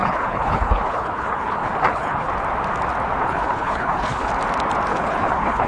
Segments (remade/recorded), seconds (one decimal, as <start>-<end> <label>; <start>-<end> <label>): 0.0-2.3 remade; 2.3-3.2 recorded; 3.2-4.3 remade; 4.3-4.9 recorded; 4.9-5.7 remade